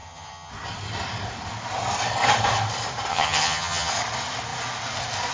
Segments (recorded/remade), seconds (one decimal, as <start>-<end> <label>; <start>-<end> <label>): 0.0-0.5 remade; 0.5-3.1 recorded; 3.1-3.9 remade; 3.9-5.3 recorded